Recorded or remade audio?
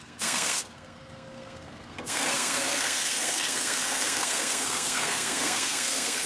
remade